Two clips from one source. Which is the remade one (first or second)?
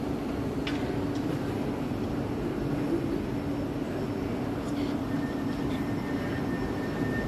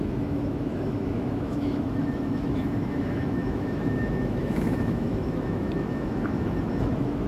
second